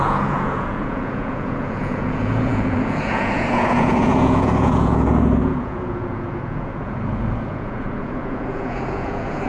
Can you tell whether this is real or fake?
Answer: fake